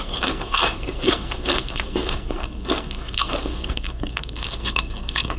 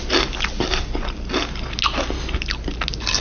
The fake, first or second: first